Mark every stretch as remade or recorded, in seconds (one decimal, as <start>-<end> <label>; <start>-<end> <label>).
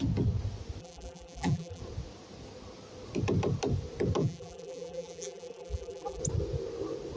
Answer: 0.0-0.8 recorded; 0.8-1.8 remade; 1.8-4.2 recorded; 4.2-6.2 remade; 6.2-7.2 recorded